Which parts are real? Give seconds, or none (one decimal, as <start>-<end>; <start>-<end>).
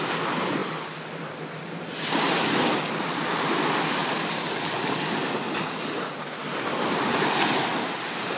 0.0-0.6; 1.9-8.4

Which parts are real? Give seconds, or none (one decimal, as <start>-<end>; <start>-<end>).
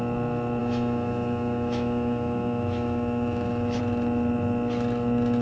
0.0-0.6; 3.8-5.4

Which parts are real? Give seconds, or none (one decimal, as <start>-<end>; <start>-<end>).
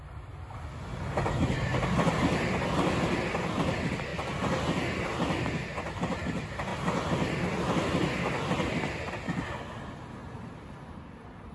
0.0-4.1; 5.0-11.5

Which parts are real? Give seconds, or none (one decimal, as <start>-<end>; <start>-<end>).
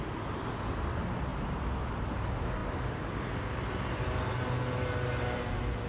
0.0-5.9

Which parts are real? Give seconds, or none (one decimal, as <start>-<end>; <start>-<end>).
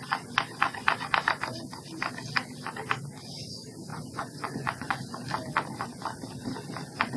0.0-3.9; 5.0-7.2